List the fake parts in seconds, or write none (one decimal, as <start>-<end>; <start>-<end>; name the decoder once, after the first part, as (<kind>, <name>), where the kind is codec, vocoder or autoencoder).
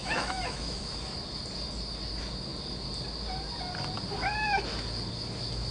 0.0-0.8 (autoencoder, DAC-VAE)